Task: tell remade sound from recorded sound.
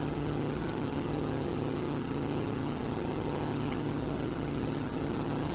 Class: remade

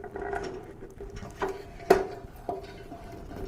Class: recorded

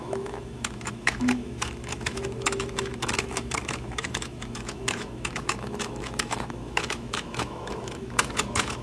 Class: remade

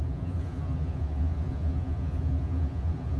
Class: remade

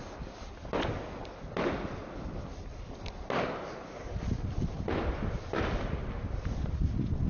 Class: recorded